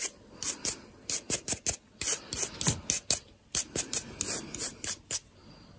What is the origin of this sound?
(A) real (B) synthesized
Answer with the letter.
A